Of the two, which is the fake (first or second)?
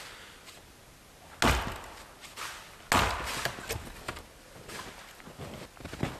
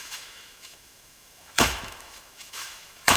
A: second